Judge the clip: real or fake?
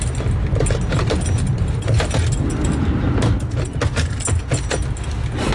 real